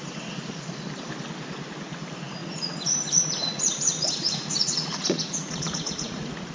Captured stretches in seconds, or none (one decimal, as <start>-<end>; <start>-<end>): 0.0-2.4